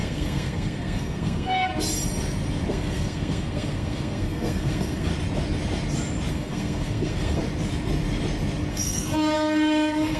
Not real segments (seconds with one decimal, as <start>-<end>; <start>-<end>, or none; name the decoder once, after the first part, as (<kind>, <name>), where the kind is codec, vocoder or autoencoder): 0.0-1.7 (codec, SNAC); 2.7-5.1; 6.3-7.4; 8.7-10.2